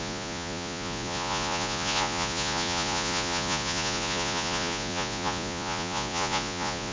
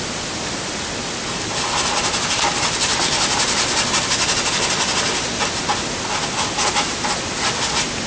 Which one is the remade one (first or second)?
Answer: first